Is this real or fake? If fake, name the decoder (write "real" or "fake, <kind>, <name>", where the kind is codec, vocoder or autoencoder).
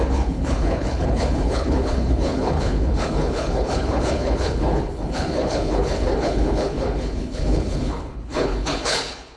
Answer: fake, codec, HILCodec